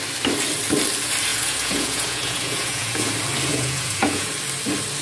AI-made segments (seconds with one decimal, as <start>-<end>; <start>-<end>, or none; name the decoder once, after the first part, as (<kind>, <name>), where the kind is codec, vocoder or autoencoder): 1.3-3.1 (vocoder, Vocos); 3.5-4.3